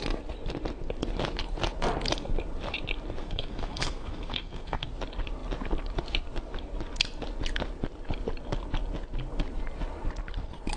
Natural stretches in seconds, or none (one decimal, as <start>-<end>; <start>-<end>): 0.0-3.2; 4.9-10.8

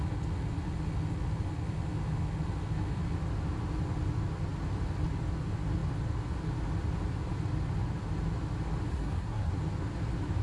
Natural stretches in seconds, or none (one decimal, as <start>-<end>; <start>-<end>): 0.0-8.9; 9.5-10.4

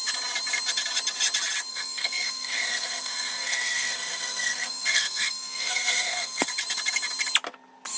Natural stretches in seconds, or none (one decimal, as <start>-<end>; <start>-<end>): 0.0-1.7; 6.5-8.0

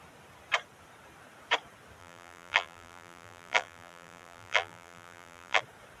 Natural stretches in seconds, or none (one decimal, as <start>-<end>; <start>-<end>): 0.0-2.0; 5.6-6.0